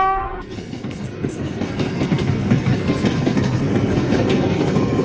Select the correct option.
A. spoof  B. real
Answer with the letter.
A